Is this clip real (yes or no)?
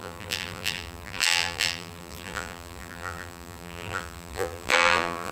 no